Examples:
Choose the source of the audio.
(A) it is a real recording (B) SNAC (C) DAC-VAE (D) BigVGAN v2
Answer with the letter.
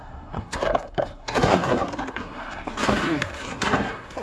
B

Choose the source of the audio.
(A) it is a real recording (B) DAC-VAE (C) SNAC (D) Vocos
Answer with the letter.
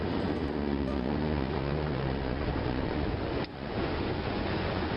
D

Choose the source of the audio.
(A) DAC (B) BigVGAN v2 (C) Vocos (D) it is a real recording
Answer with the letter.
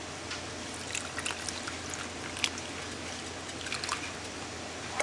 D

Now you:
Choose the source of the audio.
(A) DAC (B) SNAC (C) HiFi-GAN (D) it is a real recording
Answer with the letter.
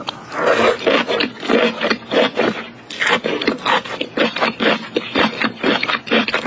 D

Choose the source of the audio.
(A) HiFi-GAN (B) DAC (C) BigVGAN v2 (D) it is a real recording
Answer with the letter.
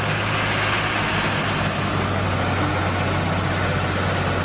D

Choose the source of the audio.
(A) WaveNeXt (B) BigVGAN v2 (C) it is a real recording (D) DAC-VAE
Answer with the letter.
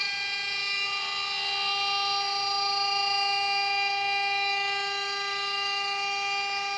C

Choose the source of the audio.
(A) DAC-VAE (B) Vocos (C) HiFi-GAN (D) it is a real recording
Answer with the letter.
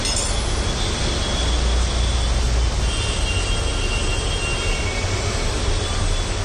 D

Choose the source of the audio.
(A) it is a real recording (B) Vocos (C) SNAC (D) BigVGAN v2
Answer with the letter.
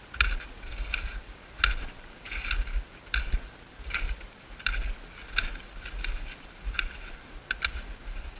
A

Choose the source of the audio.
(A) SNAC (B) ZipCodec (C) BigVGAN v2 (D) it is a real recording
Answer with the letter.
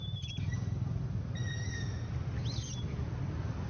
D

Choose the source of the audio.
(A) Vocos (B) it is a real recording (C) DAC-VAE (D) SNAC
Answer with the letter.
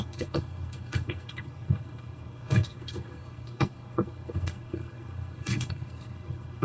D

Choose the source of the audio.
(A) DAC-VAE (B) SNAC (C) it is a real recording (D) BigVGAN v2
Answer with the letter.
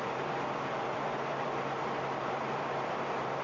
D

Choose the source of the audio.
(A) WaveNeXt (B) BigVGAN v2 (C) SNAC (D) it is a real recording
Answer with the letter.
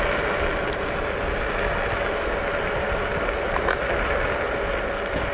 D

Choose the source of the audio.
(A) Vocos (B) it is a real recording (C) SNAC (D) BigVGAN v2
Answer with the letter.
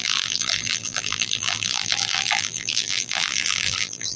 D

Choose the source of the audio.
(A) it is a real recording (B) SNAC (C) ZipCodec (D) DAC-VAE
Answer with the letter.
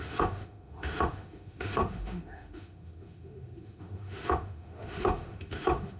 D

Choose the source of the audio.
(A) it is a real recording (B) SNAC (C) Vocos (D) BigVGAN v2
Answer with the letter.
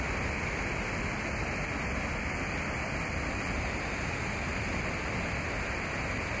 A